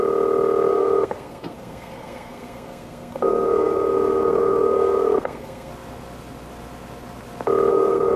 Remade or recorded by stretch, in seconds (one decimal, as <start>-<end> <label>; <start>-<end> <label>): 0.0-0.7 recorded; 0.7-5.7 remade; 5.7-7.7 recorded; 7.7-8.2 remade